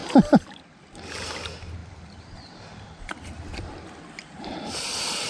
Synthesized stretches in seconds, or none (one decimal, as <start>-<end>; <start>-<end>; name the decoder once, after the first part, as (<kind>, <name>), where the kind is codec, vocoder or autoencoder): 1.8-5.3 (vocoder, BigVGAN v2)